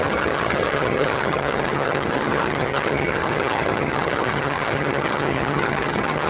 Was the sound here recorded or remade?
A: remade